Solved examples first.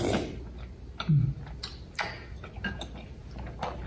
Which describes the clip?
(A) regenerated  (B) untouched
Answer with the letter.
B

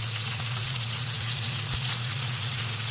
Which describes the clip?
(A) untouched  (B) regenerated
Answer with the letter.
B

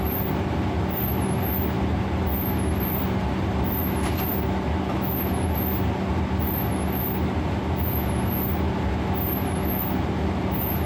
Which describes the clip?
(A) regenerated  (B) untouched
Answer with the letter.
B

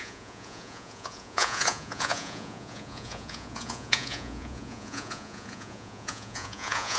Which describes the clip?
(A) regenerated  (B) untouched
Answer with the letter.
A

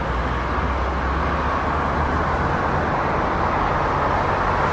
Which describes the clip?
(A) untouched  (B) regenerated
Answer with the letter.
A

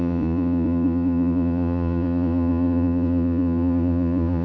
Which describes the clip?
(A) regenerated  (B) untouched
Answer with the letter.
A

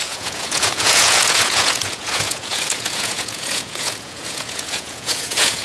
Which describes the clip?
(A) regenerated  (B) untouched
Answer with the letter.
A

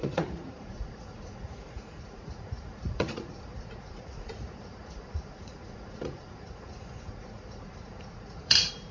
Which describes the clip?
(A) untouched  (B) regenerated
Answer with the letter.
B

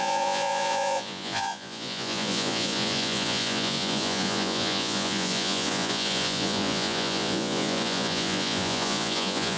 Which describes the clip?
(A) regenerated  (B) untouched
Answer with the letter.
A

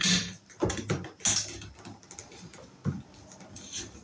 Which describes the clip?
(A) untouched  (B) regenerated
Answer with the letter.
A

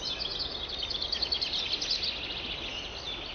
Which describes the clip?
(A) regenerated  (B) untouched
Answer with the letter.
B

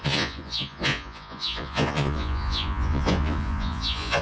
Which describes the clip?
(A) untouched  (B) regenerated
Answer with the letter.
B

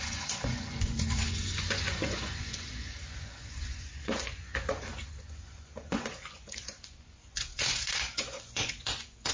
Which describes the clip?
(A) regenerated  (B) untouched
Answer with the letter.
A